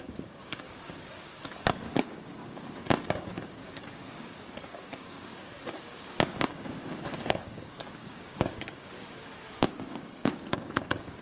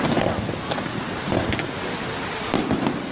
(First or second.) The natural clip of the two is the second